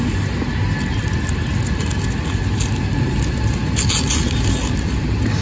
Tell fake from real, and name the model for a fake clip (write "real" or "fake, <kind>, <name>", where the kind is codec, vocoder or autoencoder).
real